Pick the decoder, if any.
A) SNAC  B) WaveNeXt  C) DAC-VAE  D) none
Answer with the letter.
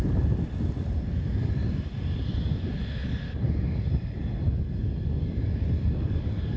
D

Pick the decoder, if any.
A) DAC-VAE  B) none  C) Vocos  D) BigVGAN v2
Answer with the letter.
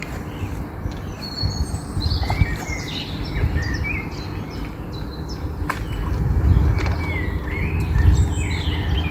B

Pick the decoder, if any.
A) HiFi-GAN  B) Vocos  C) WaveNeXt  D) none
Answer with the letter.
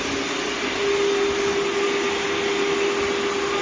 D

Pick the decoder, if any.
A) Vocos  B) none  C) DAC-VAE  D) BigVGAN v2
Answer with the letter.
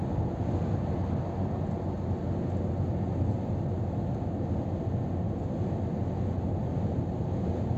B